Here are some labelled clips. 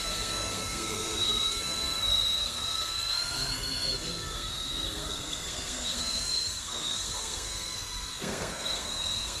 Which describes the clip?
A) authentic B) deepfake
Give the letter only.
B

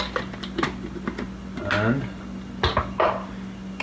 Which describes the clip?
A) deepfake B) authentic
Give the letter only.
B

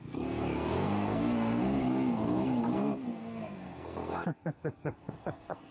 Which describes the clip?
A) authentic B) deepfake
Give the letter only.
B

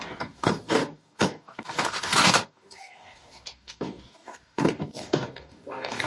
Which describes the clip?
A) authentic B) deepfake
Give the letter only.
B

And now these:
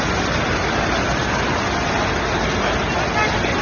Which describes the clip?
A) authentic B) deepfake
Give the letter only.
A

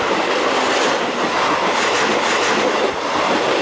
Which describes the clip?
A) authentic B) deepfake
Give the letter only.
A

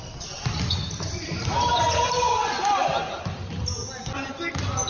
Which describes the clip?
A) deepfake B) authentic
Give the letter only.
B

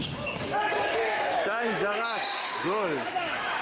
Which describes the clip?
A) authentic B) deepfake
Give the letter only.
B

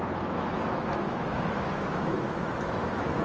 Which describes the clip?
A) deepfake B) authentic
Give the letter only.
A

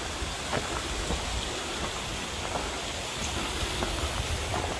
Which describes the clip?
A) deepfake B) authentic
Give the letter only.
B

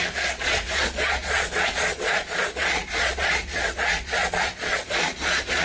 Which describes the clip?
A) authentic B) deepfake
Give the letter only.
B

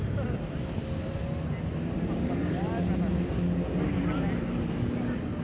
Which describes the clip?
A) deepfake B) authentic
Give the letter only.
B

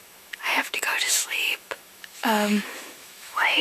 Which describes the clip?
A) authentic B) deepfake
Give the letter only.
B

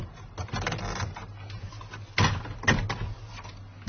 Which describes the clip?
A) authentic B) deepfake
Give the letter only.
A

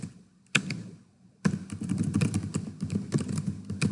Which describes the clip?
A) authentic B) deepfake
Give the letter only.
A